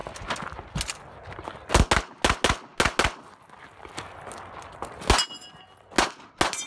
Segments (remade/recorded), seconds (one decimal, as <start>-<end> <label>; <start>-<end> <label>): 0.0-6.7 recorded